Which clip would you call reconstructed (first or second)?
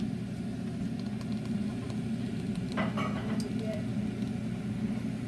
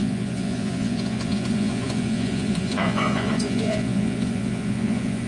second